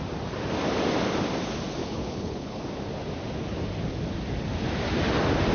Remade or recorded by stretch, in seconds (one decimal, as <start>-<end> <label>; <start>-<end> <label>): 0.0-1.8 recorded; 1.8-2.6 remade; 2.6-5.5 recorded